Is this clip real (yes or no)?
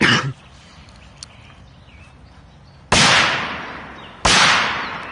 yes